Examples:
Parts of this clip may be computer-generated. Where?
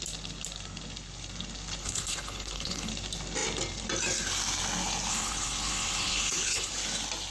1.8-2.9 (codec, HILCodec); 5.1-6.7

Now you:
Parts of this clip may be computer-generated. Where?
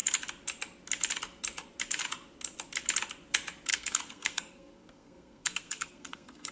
3.7-6.5 (codec, SNAC)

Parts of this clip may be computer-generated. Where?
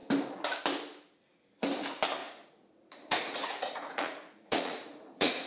2.2-5.5 (vocoder, Vocos)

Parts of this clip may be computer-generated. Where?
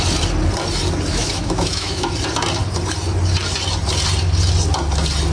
1.1-2.1 (autoencoder, DAC-VAE)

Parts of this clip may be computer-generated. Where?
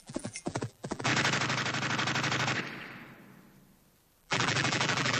0.0-1.1 (vocoder, BigVGAN v2); 4.2-5.2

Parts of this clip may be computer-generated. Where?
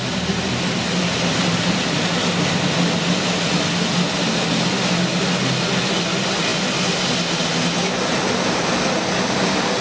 none